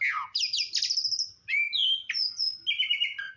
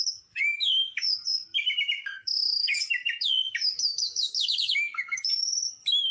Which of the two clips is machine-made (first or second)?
second